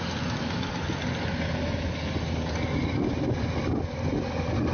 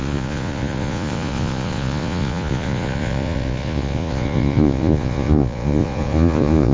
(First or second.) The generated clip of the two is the second